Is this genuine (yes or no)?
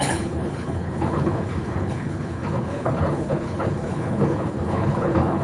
no